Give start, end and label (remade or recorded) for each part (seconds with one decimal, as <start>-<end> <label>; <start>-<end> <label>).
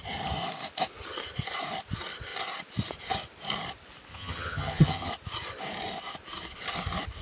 0.0-4.1 recorded; 4.1-5.1 remade; 5.1-7.2 recorded